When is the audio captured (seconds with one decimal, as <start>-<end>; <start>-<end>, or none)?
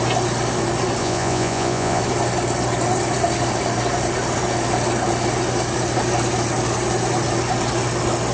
0.0-1.0; 2.0-8.3